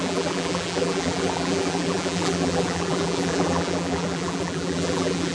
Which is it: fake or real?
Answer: fake